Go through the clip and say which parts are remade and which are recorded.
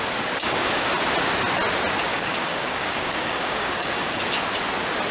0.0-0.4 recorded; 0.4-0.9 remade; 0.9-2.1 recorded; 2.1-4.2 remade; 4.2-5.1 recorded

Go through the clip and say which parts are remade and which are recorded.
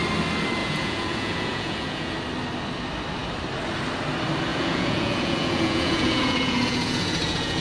0.0-0.6 recorded; 0.6-2.2 remade; 2.2-4.5 recorded; 4.5-7.6 remade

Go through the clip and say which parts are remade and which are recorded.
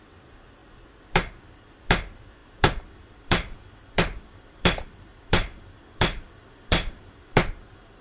0.0-8.0 remade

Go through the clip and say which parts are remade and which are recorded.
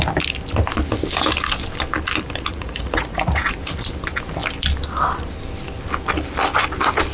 0.0-2.5 recorded; 2.5-3.6 remade; 3.6-7.1 recorded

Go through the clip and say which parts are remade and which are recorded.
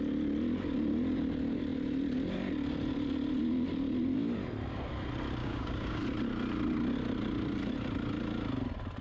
0.0-5.4 recorded; 5.4-6.0 remade; 6.0-9.0 recorded